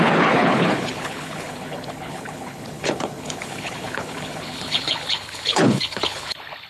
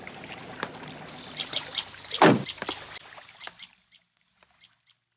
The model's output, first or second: first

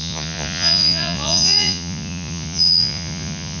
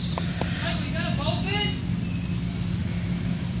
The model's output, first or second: first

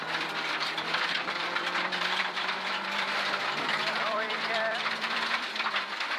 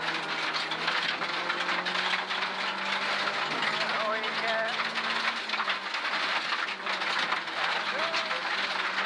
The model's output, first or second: first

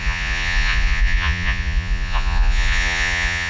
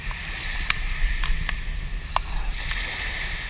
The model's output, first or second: first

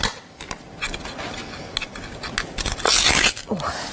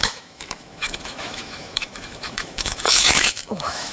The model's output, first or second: second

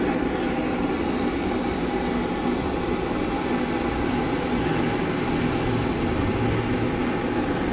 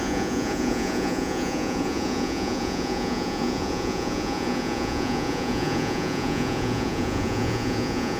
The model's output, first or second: second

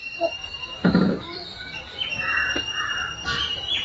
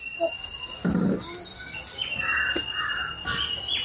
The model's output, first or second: first